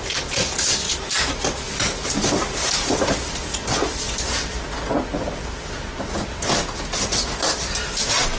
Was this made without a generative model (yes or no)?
yes